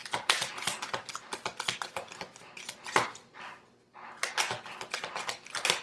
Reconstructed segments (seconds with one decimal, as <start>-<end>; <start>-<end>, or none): 0.0-0.9